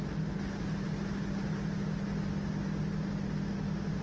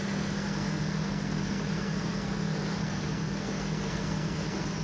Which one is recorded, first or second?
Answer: first